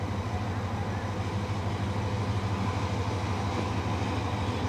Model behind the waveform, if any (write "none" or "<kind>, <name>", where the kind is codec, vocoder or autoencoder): none